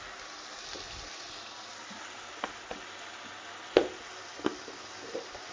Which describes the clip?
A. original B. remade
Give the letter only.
A